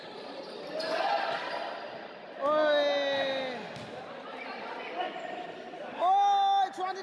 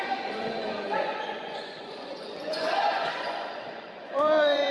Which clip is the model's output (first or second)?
second